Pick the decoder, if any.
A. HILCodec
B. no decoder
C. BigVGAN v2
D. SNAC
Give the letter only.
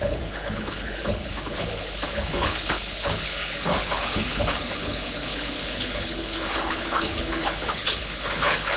A